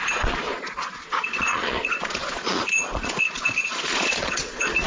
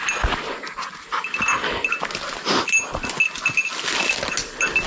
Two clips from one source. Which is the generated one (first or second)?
first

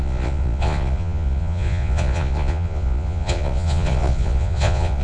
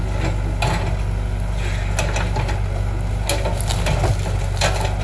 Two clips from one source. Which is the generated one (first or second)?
first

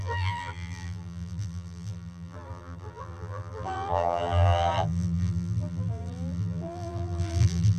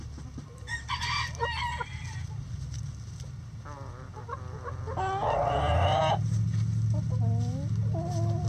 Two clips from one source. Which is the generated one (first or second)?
first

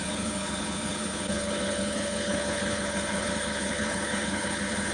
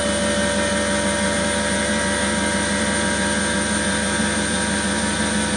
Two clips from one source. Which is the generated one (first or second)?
first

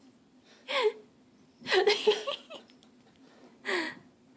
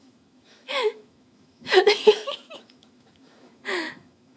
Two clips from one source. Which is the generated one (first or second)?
second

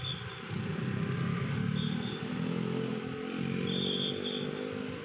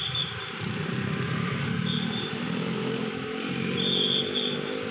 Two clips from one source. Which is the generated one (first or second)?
second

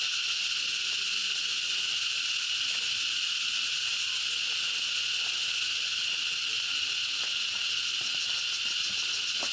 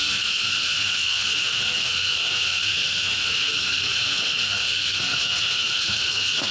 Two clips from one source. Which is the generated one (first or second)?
second